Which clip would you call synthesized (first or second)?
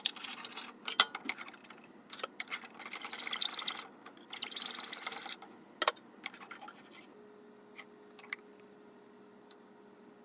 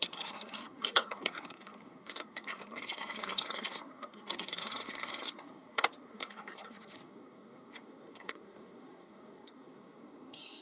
second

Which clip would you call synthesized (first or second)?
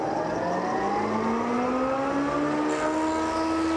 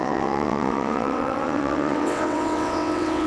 second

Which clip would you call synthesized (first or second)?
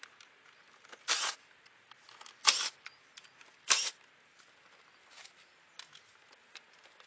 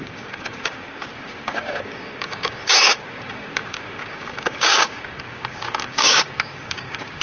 second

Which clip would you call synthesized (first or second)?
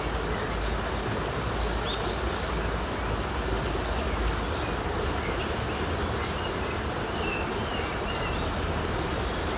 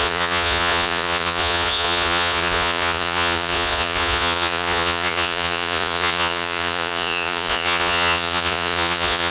second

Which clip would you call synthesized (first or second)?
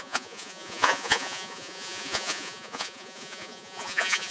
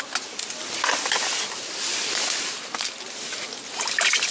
first